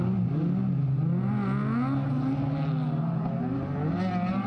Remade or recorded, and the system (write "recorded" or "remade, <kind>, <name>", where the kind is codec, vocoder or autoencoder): recorded